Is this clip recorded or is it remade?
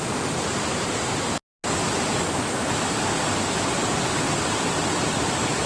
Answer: recorded